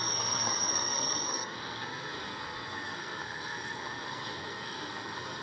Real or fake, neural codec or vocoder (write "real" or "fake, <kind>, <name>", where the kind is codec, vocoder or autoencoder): fake, codec, SNAC